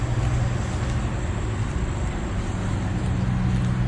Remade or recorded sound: recorded